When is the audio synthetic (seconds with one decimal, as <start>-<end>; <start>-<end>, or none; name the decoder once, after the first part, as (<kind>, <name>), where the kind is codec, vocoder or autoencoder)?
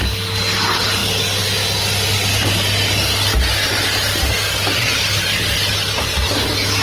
none